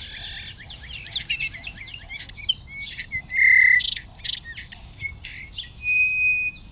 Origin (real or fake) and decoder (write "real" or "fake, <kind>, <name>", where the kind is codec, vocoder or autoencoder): real